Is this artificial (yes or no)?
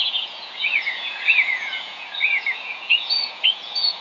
yes